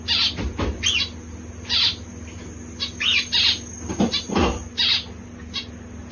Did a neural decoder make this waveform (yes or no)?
no